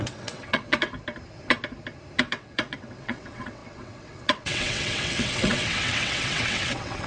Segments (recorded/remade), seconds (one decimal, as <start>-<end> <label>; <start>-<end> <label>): 0.0-0.9 remade; 0.9-2.2 recorded; 2.2-7.1 remade